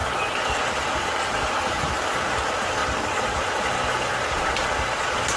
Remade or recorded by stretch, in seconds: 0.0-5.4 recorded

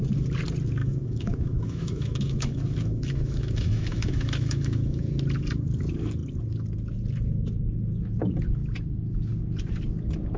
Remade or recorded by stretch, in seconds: 0.0-0.8 recorded; 0.8-5.0 remade; 5.0-10.4 recorded

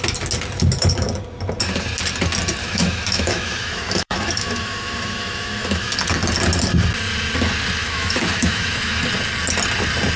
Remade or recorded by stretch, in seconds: 0.0-2.6 recorded; 2.6-5.9 remade; 5.9-7.8 recorded; 7.8-9.0 remade; 9.0-10.2 recorded

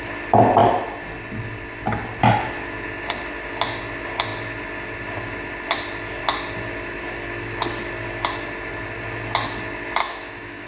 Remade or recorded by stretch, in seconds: 0.0-10.0 recorded; 10.0-10.7 remade

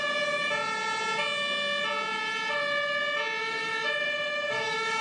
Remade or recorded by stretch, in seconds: 0.0-3.4 recorded; 3.4-5.0 remade

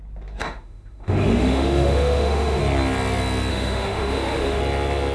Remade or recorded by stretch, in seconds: 0.0-0.4 recorded; 0.4-2.6 remade; 2.6-3.5 recorded; 3.5-4.6 remade; 4.6-5.1 recorded

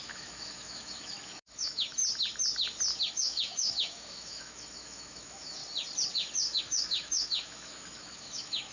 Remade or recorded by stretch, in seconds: 0.0-2.0 remade; 2.0-3.1 recorded; 3.1-5.6 remade; 5.6-6.6 recorded; 6.6-8.7 remade

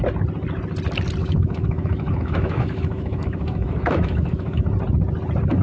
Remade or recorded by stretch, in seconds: 0.0-1.2 recorded; 1.2-4.6 remade; 4.6-5.6 recorded